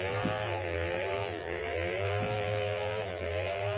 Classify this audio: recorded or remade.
remade